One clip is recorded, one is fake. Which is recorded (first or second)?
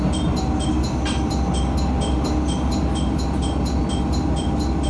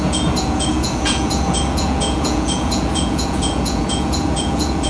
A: first